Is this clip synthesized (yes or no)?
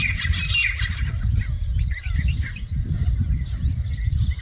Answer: no